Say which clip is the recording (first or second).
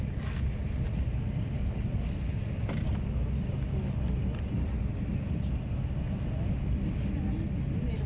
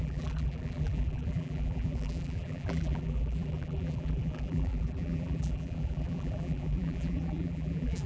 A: first